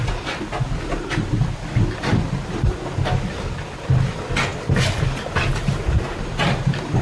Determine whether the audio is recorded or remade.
recorded